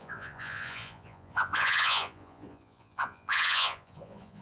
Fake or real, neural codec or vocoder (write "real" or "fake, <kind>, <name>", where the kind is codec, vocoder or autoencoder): fake, vocoder, Vocos